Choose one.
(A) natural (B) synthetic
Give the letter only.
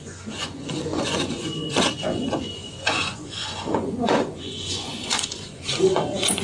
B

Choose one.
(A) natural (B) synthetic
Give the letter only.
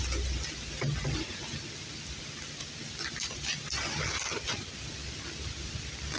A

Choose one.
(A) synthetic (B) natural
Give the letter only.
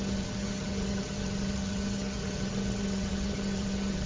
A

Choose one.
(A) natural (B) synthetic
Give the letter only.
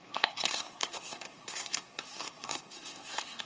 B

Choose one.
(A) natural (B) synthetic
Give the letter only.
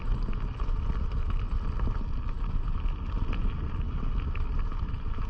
A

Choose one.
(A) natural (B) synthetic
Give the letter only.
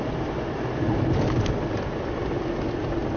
A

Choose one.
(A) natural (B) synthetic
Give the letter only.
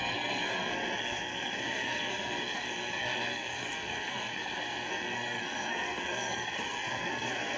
B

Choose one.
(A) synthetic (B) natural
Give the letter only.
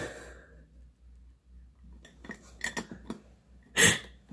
B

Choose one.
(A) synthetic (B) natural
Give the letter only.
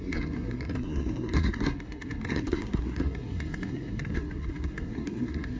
A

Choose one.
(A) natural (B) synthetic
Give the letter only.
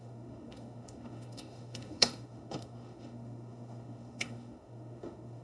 B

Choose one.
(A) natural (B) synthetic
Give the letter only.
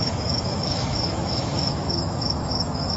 B